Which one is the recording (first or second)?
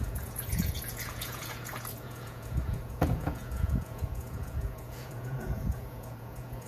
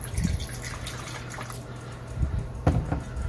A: second